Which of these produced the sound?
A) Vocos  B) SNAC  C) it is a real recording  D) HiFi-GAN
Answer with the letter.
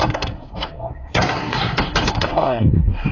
B